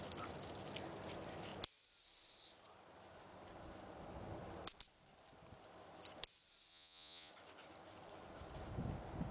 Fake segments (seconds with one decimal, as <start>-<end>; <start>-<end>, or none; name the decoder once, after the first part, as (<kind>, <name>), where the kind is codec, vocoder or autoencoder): 6.7-7.3 (vocoder, Vocos)